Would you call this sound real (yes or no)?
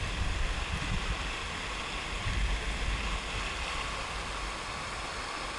yes